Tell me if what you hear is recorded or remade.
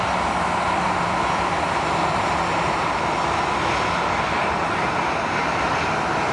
recorded